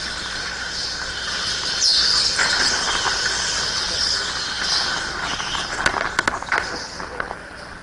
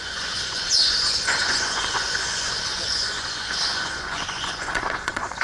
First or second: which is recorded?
first